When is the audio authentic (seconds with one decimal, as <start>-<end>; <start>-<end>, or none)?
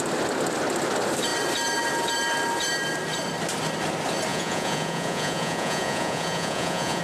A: 0.0-4.3